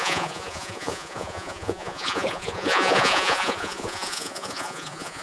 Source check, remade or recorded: remade